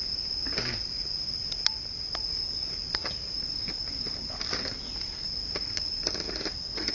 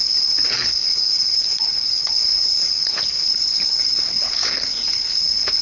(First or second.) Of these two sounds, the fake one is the second